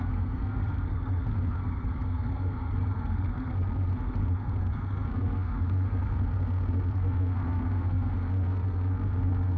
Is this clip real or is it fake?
fake